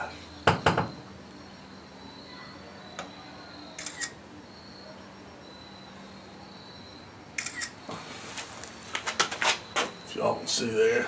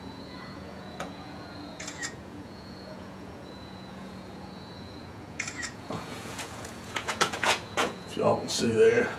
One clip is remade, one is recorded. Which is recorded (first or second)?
first